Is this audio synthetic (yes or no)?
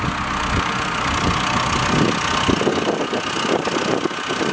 no